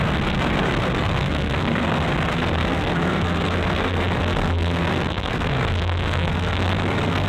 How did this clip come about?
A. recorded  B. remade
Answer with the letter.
B